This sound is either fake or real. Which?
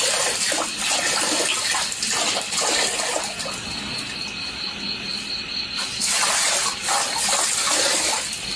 real